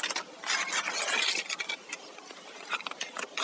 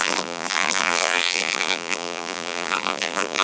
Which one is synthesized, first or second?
second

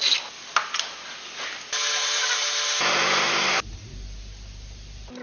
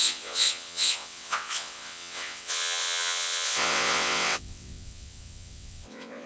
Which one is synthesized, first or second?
second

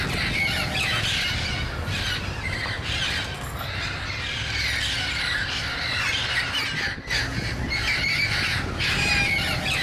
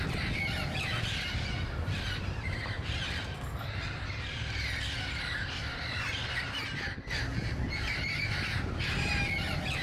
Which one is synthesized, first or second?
second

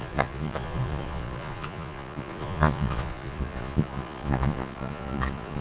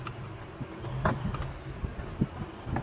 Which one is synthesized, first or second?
first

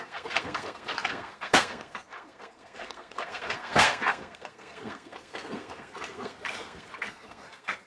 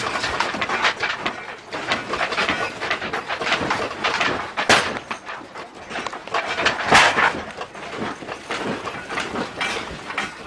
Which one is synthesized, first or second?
first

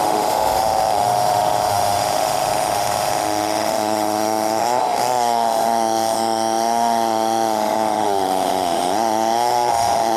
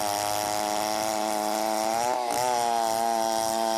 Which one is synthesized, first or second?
first